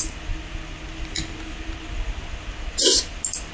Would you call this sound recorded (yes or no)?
yes